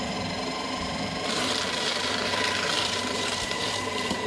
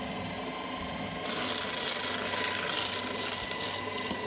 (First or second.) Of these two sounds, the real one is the second